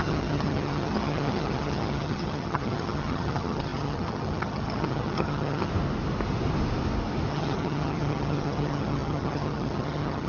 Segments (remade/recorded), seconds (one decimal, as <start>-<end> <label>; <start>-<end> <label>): 0.0-5.7 remade; 5.7-7.3 recorded; 7.3-10.3 remade